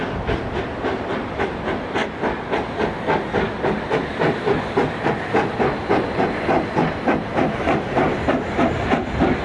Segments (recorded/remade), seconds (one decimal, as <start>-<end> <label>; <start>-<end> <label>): 0.0-9.4 recorded